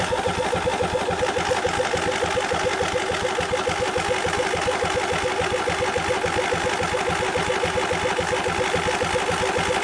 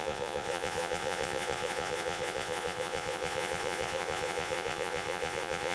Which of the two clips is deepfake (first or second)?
second